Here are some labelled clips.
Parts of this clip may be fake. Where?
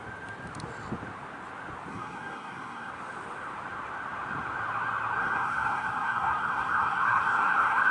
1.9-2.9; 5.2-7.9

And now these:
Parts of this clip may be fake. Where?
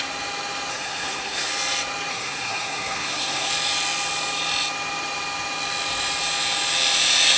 0.7-1.5; 2.1-3.5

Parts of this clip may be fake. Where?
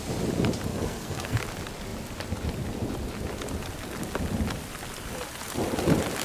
0.7-1.4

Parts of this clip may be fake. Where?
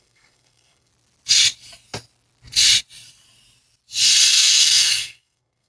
0.0-0.9; 4.3-5.7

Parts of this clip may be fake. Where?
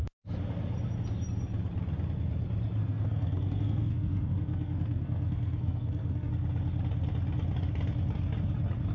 2.8-6.3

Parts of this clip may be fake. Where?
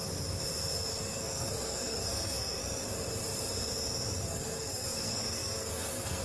1.0-2.6; 4.2-6.2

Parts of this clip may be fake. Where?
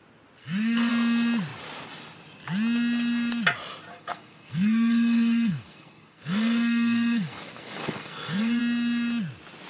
0.4-0.9; 3.9-8.6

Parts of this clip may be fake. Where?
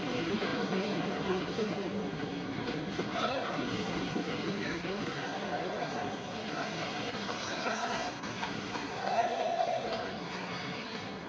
0.0-11.3